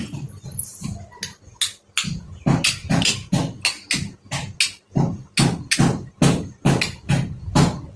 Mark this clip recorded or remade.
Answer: recorded